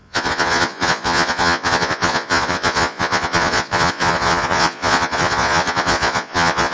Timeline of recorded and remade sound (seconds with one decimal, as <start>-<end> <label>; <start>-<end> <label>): 0.0-6.7 remade